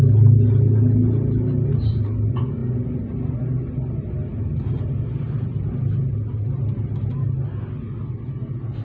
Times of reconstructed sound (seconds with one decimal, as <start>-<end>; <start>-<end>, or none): none